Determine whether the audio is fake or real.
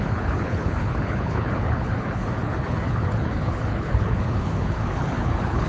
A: fake